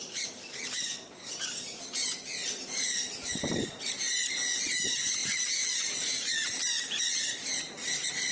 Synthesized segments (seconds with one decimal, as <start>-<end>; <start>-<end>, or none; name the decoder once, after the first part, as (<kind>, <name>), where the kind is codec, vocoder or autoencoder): 0.0-7.8 (vocoder, BigVGAN v2)